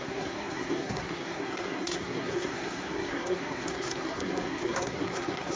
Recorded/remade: remade